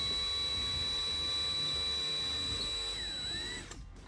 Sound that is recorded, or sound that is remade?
recorded